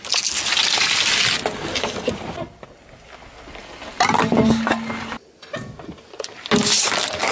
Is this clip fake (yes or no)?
no